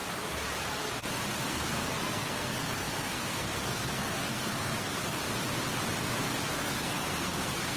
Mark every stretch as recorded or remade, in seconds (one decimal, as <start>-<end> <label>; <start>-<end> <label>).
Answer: 0.0-1.5 recorded; 1.5-5.2 remade; 5.2-6.5 recorded; 6.5-7.8 remade